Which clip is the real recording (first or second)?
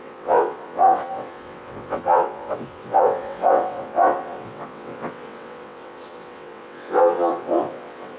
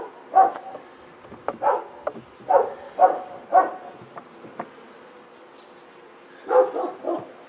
second